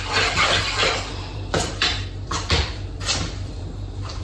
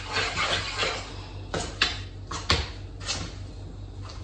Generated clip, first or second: first